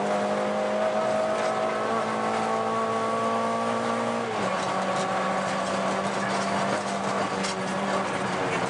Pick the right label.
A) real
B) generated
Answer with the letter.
A